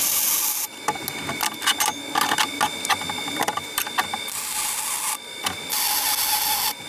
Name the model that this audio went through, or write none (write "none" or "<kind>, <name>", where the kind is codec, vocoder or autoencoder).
none